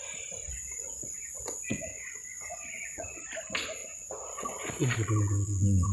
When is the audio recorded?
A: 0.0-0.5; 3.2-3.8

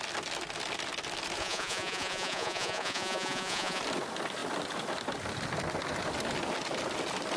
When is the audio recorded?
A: 0.0-1.4; 3.8-7.4

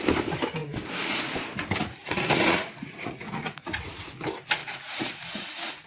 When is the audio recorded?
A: 0.0-1.8; 4.1-4.6

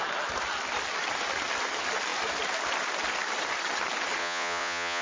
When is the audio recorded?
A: 0.0-4.2

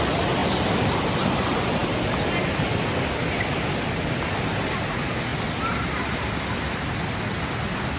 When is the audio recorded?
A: 0.0-8.0

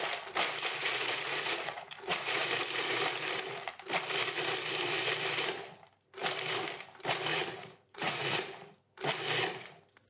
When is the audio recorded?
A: 0.0-0.8; 2.4-7.3; 8.5-10.1

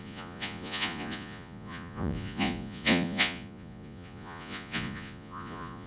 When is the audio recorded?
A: none